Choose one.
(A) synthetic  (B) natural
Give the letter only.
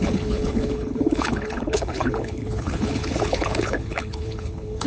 A